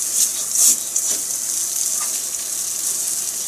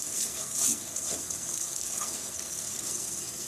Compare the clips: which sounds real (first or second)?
first